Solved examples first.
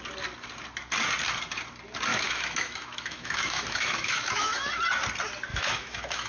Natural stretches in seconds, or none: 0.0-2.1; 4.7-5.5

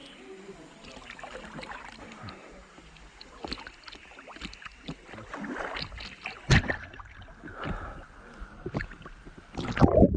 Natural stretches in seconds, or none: 0.0-10.2

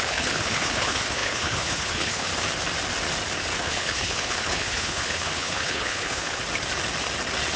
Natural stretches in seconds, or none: 2.3-3.6; 6.4-7.6

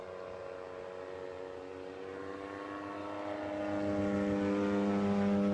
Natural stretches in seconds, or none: 0.0-5.5

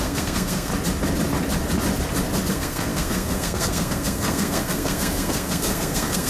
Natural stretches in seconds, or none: 0.7-2.5